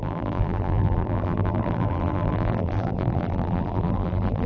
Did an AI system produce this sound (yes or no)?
yes